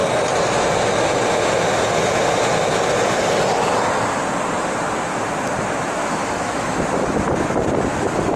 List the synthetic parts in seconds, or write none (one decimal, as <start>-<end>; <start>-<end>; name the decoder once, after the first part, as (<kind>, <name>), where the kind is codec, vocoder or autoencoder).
6.0-6.8 (autoencoder, DAC-VAE)